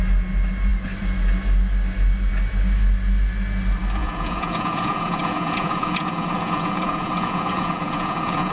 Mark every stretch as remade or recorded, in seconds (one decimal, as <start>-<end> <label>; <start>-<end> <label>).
0.0-4.0 recorded; 4.0-8.5 remade